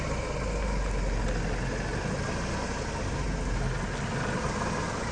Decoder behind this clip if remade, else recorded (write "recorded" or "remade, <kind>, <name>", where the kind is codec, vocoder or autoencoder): recorded